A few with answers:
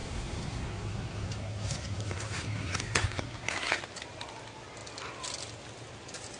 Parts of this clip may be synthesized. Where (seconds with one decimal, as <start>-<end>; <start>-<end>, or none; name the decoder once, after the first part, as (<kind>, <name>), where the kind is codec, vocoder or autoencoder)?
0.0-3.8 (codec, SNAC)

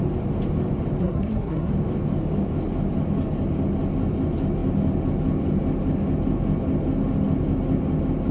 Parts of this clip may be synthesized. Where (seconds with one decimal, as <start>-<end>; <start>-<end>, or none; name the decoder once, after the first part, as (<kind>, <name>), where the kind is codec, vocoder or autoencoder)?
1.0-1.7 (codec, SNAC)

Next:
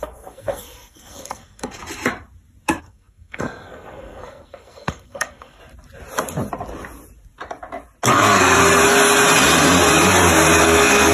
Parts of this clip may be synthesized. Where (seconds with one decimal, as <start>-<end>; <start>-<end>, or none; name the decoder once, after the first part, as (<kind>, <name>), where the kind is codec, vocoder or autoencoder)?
0.0-1.8 (codec, SNAC); 2.8-5.6; 8.1-8.6; 10.6-11.1

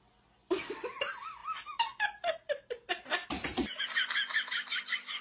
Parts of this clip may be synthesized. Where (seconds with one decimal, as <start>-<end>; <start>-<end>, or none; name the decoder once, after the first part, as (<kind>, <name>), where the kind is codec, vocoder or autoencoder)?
none

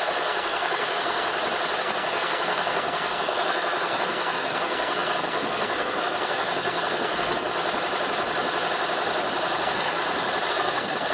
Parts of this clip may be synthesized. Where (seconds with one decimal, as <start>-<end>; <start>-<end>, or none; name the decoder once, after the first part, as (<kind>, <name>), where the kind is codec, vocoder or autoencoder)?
0.0-1.3 (codec, SNAC); 1.8-7.5; 9.6-10.0; 10.5-11.1

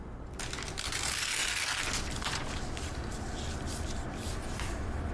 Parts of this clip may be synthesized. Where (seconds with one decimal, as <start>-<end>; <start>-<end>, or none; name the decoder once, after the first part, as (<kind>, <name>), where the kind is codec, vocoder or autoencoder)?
none

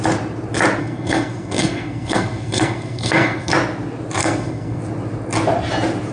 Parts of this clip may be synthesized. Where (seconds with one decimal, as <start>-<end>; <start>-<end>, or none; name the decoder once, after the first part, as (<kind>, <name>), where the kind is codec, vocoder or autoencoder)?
0.8-3.5 (codec, SNAC); 4.2-4.8

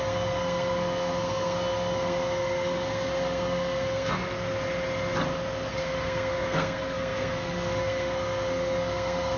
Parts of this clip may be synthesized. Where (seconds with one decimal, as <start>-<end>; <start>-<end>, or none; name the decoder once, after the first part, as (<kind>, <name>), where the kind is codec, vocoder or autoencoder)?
0.0-4.2 (codec, SNAC); 5.7-9.4